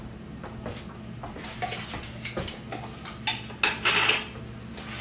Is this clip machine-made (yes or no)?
no